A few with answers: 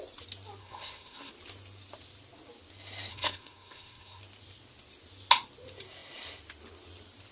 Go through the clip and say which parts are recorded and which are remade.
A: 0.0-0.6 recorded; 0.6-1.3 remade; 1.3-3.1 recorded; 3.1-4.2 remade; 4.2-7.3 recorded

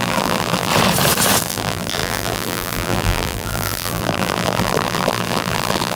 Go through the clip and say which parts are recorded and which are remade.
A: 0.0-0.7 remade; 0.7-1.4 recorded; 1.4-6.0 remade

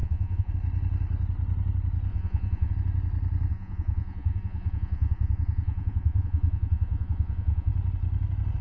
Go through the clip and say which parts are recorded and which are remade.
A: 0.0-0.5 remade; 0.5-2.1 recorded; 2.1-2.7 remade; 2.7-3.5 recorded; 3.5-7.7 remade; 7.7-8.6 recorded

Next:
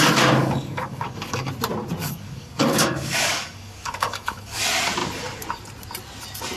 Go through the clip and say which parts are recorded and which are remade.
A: 0.0-0.4 recorded; 0.4-1.5 remade; 1.5-2.0 recorded; 2.0-4.6 remade; 4.6-6.6 recorded